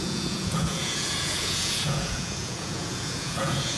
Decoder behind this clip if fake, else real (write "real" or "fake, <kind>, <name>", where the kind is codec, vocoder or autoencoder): fake, vocoder, Vocos